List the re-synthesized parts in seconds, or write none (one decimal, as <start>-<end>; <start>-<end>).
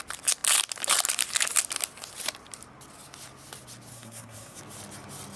3.9-4.6